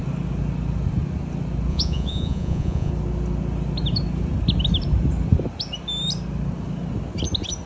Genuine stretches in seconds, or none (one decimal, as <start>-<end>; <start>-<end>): 0.0-1.7; 2.9-7.7